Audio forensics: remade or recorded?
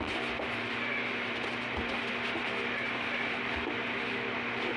recorded